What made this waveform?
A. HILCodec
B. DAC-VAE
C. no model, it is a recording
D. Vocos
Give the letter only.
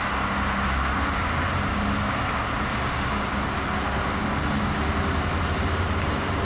C